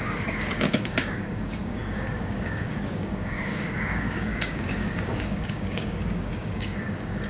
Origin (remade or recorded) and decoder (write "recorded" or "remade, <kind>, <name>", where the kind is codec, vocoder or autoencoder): remade, codec, DAC